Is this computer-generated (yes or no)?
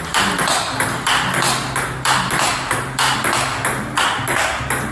no